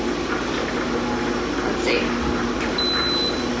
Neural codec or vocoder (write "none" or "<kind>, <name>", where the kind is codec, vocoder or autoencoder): none